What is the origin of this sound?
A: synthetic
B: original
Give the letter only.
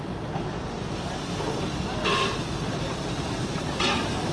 A